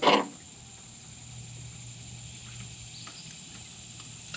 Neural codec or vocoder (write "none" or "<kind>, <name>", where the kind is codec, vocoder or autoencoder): none